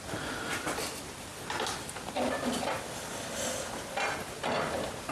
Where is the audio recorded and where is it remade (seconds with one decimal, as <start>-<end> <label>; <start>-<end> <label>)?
0.0-5.1 recorded